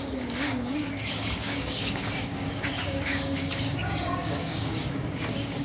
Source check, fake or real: fake